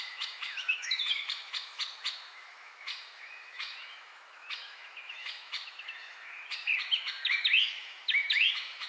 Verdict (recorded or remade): remade